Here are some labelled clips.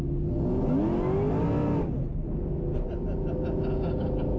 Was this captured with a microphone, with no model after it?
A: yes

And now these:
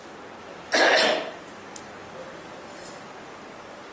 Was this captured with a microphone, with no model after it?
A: yes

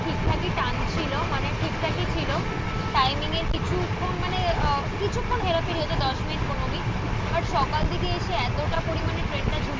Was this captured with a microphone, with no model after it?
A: yes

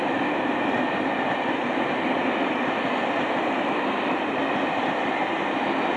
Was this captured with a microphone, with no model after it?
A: yes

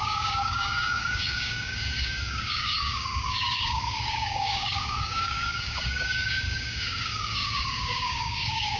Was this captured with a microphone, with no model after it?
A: no